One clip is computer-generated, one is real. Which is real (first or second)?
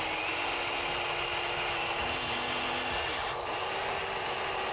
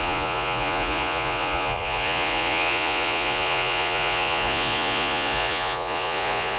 first